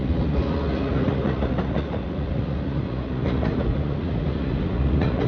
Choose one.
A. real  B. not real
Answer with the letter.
B